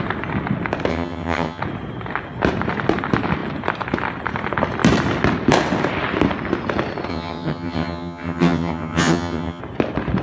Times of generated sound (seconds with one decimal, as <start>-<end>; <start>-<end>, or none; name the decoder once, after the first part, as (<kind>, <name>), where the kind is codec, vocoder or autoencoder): 0.9-1.6 (vocoder, HiFi-GAN); 7.1-9.6